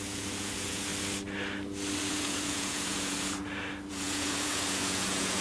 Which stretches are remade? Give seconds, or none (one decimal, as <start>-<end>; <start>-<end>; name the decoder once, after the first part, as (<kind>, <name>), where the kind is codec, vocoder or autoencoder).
0.0-0.9 (vocoder, Vocos); 2.0-3.4; 3.9-5.4